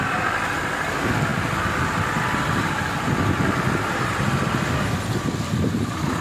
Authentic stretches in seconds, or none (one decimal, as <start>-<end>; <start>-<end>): 0.0-6.2